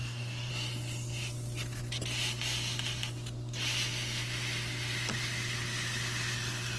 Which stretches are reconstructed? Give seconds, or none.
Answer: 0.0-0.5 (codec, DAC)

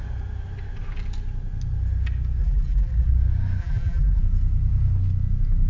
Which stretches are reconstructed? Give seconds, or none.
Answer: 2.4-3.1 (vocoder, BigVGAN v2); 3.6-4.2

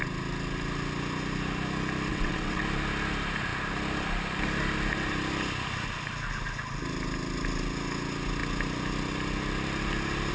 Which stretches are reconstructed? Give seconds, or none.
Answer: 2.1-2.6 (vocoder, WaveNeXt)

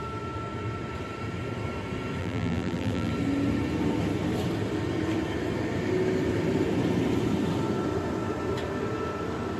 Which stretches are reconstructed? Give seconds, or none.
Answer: 2.2-3.1 (vocoder, BigVGAN v2)

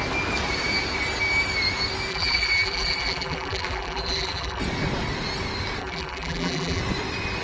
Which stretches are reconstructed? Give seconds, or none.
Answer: 2.1-4.6 (vocoder, BigVGAN v2); 5.8-6.8